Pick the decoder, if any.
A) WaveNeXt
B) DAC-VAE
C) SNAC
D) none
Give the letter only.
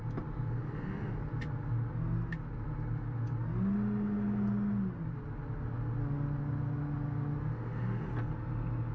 D